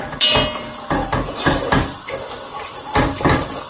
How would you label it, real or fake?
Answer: real